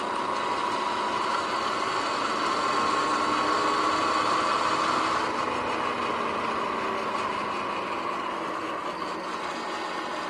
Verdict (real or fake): real